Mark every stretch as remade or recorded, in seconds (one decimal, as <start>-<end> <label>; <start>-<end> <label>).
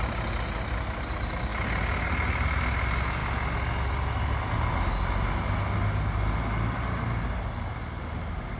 0.0-8.6 recorded